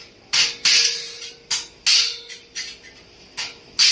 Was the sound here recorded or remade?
recorded